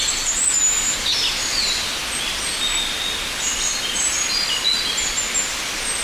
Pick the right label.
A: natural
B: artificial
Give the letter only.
A